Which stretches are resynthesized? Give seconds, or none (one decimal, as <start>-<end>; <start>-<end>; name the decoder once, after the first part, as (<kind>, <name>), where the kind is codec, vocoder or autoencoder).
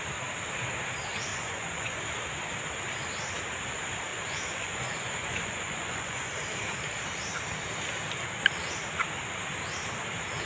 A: 1.3-2.0 (vocoder, Vocos); 4.1-6.3